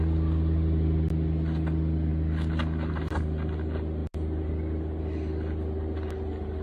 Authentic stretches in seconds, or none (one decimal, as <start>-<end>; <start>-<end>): 0.0-6.6